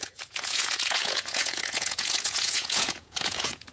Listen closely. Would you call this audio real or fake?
fake